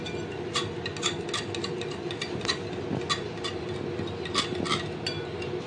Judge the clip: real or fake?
real